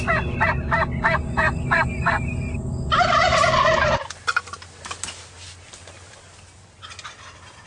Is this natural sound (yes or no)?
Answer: yes